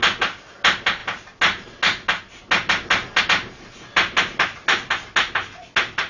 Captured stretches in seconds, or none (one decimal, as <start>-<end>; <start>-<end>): 0.0-6.1